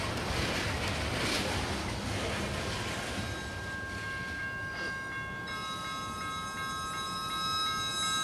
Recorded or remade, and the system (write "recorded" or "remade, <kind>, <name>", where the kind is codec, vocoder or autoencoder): recorded